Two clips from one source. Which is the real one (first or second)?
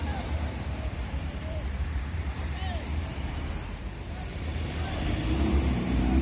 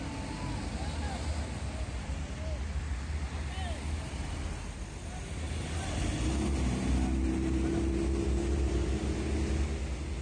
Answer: second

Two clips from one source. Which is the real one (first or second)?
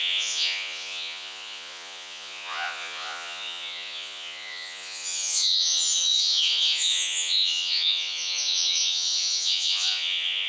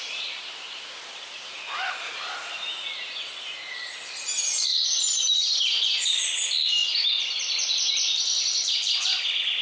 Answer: second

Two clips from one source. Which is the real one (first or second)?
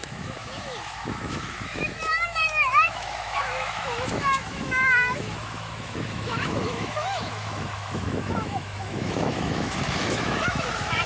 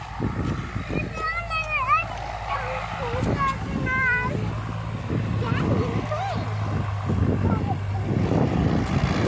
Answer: second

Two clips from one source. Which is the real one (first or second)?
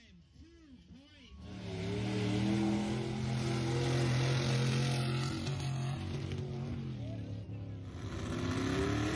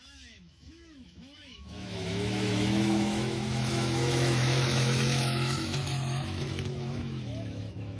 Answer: first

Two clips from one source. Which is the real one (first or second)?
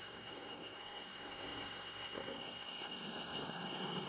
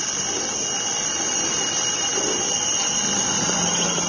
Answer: second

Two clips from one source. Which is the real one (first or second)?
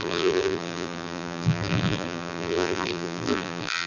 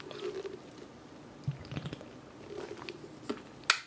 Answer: second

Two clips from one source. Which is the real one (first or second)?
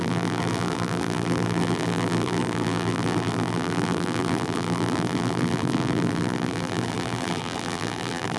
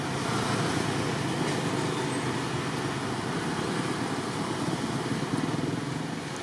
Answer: second